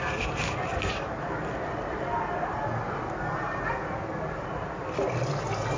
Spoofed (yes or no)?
no